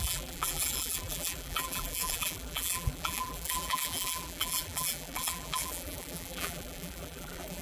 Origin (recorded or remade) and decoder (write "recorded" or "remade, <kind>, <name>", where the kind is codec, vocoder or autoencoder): remade, vocoder, BigVGAN v2